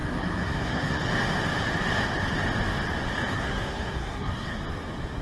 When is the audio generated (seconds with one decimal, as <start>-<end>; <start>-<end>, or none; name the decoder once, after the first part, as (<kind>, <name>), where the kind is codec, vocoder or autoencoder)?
0.0-1.0 (codec, SNAC); 3.3-4.6